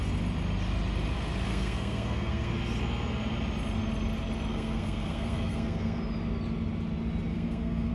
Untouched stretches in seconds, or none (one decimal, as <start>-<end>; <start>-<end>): 0.0-1.5; 2.5-4.5; 6.0-7.3